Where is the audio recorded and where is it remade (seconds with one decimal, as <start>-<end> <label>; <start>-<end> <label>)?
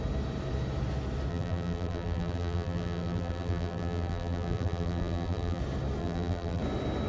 0.0-1.3 recorded; 1.3-5.6 remade; 5.6-6.0 recorded; 6.0-6.6 remade; 6.6-7.1 recorded